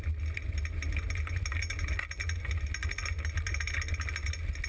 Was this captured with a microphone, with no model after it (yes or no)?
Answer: yes